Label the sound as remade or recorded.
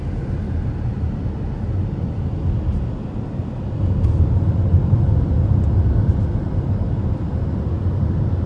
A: recorded